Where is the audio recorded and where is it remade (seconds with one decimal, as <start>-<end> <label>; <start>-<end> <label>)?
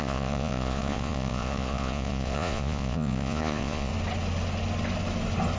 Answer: 0.0-3.9 remade; 3.9-5.6 recorded